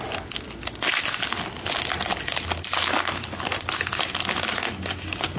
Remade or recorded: recorded